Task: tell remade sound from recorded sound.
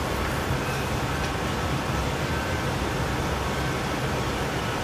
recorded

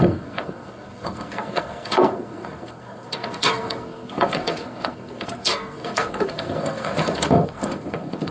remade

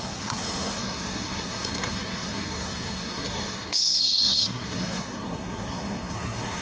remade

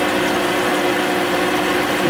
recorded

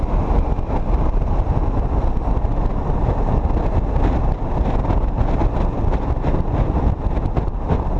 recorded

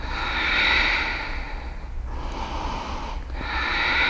recorded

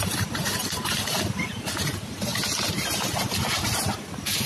recorded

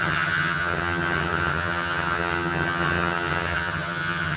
remade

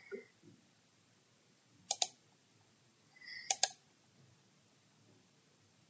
remade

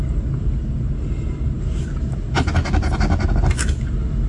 recorded